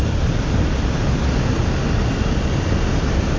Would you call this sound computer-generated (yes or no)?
no